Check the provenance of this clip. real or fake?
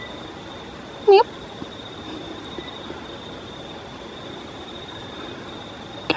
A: real